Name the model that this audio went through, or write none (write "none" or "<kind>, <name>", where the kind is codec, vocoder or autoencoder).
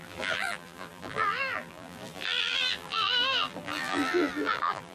vocoder, BigVGAN v2